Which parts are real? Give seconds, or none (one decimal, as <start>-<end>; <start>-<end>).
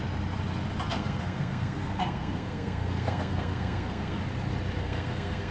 0.0-0.9; 4.2-4.8